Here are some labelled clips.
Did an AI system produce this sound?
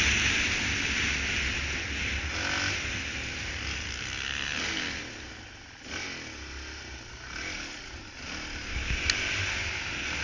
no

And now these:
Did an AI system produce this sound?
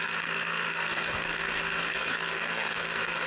yes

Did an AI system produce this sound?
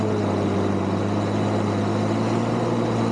no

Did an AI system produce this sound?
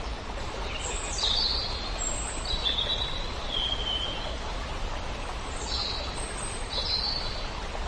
no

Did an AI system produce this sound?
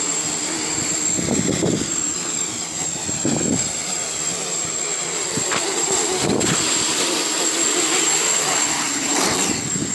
no